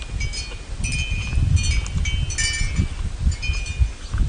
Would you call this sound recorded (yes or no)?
yes